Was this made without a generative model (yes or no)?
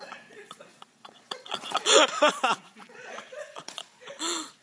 no